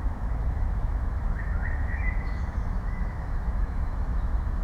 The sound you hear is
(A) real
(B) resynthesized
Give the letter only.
B